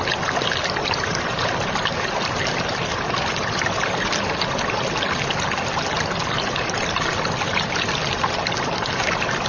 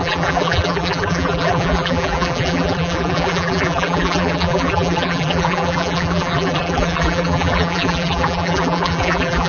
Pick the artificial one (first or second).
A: second